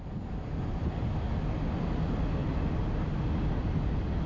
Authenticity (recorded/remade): recorded